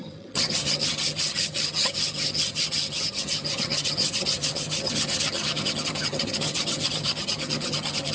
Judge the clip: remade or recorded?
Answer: remade